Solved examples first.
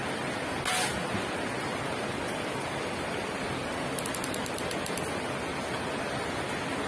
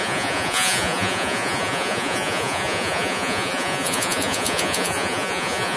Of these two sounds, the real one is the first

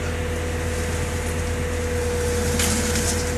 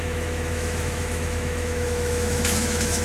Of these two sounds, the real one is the first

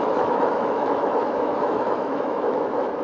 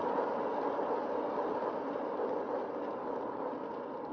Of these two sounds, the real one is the second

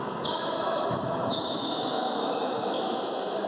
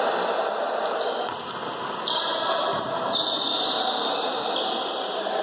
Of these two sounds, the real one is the second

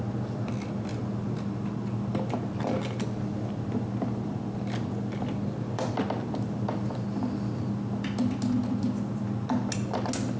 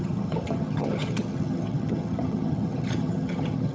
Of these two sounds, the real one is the first